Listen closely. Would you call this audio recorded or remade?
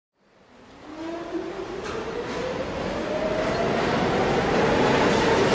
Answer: recorded